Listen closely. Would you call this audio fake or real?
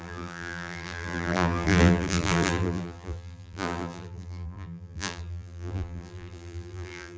fake